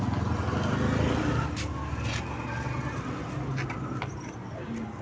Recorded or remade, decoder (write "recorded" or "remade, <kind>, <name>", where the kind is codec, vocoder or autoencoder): recorded